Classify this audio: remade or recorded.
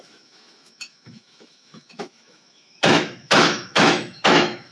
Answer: remade